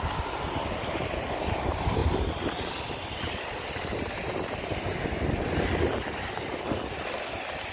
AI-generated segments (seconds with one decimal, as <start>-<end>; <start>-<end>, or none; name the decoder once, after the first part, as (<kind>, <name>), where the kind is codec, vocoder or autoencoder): none